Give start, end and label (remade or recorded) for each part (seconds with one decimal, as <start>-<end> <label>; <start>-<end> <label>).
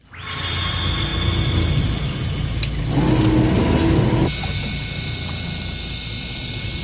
0.0-6.8 recorded